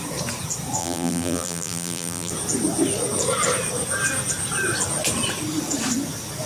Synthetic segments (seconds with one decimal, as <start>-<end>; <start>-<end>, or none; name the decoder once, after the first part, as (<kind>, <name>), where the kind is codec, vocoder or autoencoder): 0.8-2.3 (vocoder, BigVGAN v2)